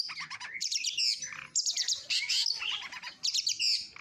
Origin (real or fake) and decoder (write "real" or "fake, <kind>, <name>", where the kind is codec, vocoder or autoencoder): real